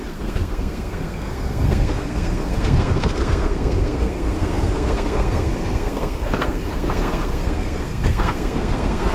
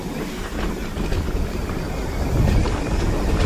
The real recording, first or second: second